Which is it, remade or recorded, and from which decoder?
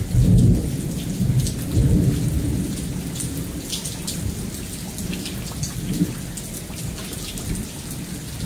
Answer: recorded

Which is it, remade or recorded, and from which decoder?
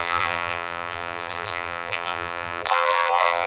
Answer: remade, vocoder, BigVGAN v2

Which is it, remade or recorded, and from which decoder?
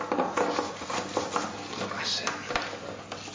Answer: recorded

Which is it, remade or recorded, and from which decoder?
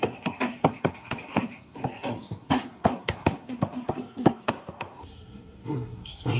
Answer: remade, codec, SNAC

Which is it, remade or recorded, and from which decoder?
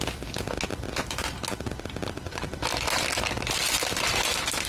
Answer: recorded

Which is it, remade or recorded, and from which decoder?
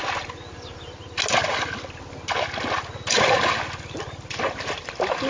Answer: recorded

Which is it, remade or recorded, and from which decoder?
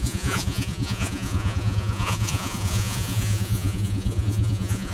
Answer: remade, vocoder, Vocos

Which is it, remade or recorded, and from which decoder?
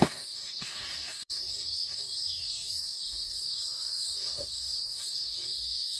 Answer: remade, codec, DAC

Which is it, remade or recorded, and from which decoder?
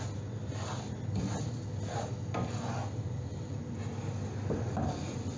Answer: recorded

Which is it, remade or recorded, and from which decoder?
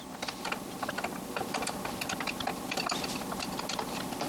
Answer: recorded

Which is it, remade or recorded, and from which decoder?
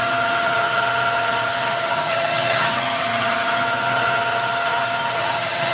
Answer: remade, vocoder, HiFi-GAN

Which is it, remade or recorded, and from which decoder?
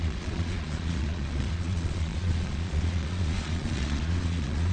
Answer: remade, vocoder, Vocos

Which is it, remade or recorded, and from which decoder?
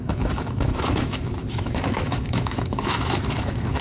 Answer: remade, autoencoder, DAC-VAE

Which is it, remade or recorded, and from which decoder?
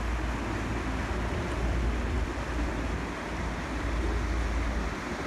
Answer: recorded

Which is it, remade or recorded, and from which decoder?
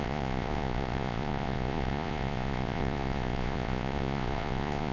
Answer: remade, vocoder, Vocos